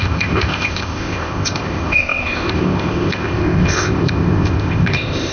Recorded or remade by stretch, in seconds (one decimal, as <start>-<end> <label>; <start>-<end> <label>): 0.0-5.3 remade